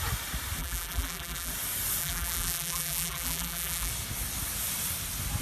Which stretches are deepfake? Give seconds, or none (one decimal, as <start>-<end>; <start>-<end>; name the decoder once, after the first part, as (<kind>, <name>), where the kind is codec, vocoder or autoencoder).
0.6-1.5 (vocoder, BigVGAN v2); 2.0-3.9